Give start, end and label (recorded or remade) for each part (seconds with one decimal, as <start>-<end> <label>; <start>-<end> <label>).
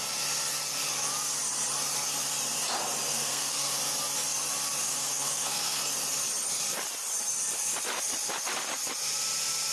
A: 0.0-3.1 recorded; 3.1-3.7 remade; 3.7-4.8 recorded; 4.8-5.8 remade; 5.8-9.7 recorded